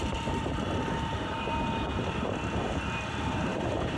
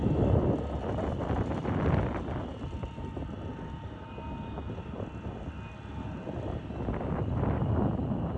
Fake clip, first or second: first